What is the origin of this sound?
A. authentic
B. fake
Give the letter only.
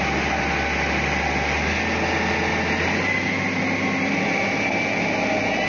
A